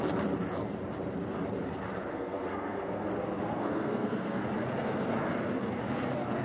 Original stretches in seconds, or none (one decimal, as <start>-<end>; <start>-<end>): 0.0-2.1; 3.1-3.5; 4.4-6.4